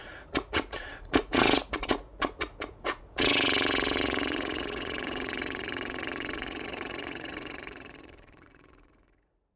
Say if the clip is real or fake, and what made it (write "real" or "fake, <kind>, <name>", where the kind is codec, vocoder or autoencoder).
fake, vocoder, Vocos